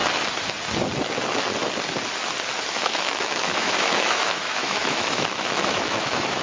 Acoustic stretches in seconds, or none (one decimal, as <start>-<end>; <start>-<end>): 0.0-2.7